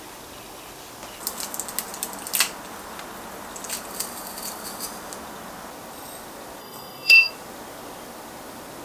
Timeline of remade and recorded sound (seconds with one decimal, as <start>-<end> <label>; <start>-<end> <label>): 0.0-6.6 recorded; 6.6-7.3 remade; 7.3-8.8 recorded